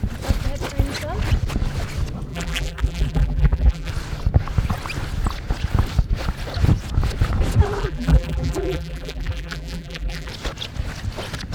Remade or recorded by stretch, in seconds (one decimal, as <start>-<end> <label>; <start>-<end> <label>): 0.0-2.3 recorded; 2.3-3.9 remade; 3.9-7.8 recorded; 7.8-10.3 remade; 10.3-11.5 recorded